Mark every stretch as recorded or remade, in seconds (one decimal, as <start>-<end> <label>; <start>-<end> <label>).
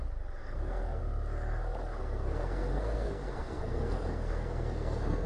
0.0-0.4 recorded; 0.4-1.0 remade; 1.0-2.0 recorded; 2.0-5.3 remade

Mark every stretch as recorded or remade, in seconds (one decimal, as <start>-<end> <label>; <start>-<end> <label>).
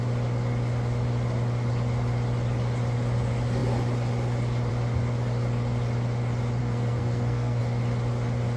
0.0-6.6 recorded; 6.6-7.6 remade; 7.6-8.6 recorded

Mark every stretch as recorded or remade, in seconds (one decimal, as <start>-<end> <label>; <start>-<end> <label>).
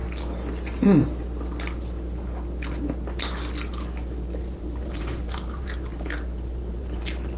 0.0-4.4 recorded; 4.4-7.4 remade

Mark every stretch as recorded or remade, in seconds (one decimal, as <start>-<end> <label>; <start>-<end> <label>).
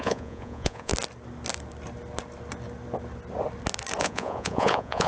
0.0-0.9 remade; 0.9-4.0 recorded; 4.0-5.1 remade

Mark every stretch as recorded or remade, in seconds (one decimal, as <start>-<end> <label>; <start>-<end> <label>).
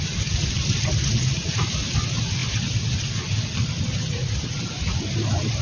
0.0-5.6 recorded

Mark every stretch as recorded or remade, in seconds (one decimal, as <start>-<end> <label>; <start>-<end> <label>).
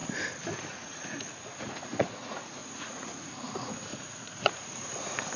0.0-0.7 recorded; 0.7-5.4 remade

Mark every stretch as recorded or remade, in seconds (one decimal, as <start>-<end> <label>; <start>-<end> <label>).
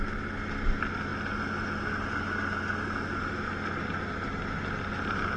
0.0-5.4 recorded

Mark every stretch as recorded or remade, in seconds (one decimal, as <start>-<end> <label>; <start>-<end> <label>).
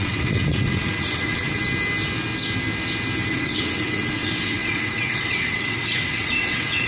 0.0-1.6 remade; 1.6-3.3 recorded; 3.3-6.9 remade